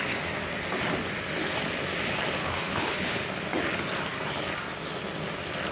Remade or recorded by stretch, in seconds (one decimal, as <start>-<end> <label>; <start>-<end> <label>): 0.0-2.4 recorded; 2.4-3.2 remade; 3.2-5.7 recorded